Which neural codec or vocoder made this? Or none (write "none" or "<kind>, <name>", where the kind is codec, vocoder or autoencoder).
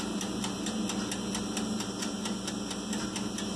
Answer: none